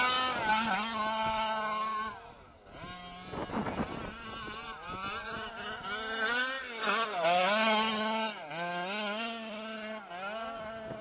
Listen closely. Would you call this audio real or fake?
real